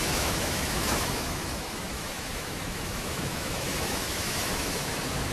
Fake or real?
fake